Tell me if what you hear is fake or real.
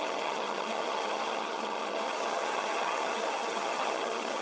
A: fake